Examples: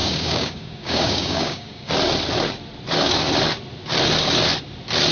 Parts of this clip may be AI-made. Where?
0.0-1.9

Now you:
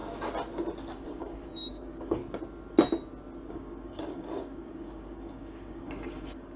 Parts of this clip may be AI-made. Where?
0.9-2.2; 3.5-6.6

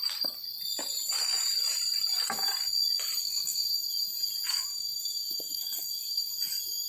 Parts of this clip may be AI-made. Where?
3.2-3.8; 4.7-6.3

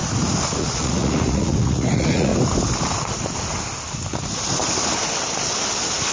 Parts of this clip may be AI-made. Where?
0.6-2.3

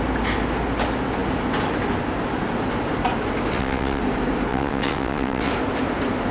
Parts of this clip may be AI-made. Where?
3.5-4.0; 4.5-5.5

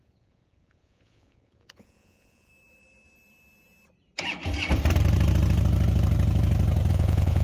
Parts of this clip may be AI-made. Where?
0.0-2.5; 6.9-7.4